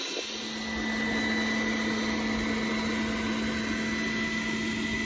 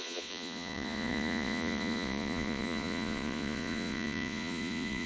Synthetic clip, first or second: second